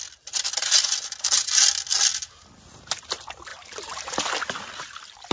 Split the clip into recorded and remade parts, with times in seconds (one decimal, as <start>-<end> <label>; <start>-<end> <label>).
0.0-5.3 recorded